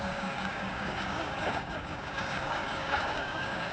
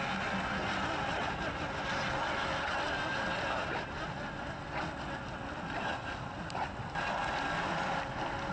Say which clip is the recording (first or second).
second